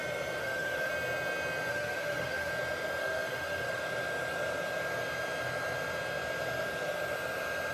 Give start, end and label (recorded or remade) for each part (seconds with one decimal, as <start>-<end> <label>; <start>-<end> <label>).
0.0-0.4 recorded; 0.4-0.9 remade; 0.9-1.7 recorded; 1.7-2.5 remade; 2.5-3.0 recorded; 3.0-3.8 remade; 3.8-7.7 recorded